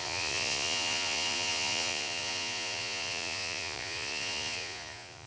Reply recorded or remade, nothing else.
remade